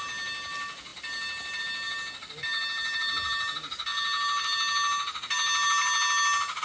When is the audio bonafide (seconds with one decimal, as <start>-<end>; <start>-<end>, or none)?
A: 0.0-6.6